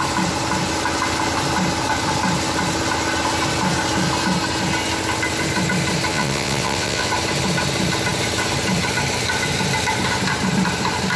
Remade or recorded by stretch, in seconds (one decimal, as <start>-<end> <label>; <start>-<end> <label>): 0.0-6.1 recorded; 6.1-7.1 remade; 7.1-11.2 recorded